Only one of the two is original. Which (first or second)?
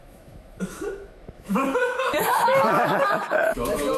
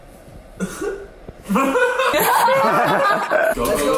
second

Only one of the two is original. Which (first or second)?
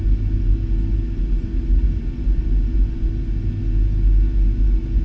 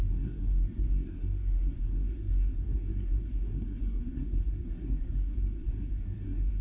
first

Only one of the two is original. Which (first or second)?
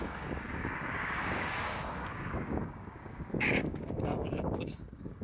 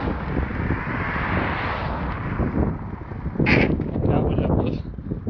second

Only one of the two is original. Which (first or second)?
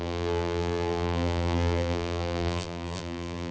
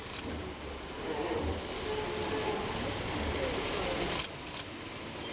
second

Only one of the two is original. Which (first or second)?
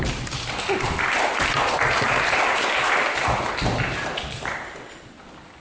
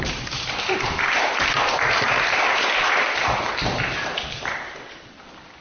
first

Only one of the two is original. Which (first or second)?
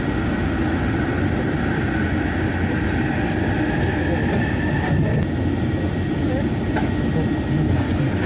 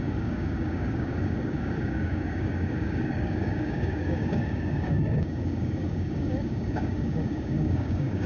first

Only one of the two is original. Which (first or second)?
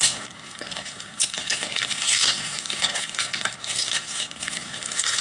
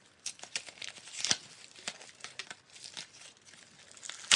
second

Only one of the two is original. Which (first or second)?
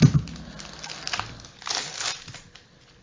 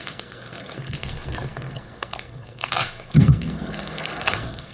first